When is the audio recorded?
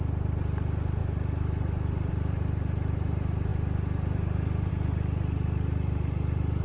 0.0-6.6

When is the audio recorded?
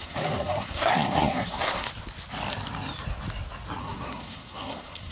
1.9-3.8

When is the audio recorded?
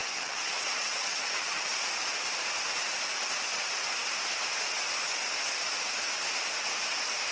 1.7-7.3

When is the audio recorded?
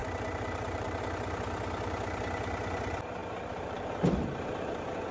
1.0-3.2; 3.9-5.1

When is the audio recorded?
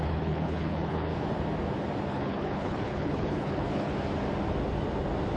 1.1-2.1; 3.9-5.4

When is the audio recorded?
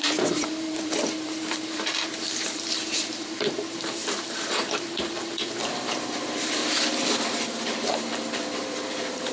6.6-7.9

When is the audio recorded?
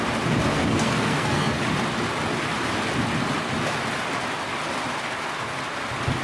0.0-0.5; 1.6-6.2